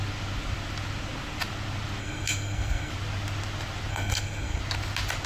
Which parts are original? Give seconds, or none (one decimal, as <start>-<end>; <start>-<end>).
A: 0.0-2.0; 2.9-3.9; 4.6-5.3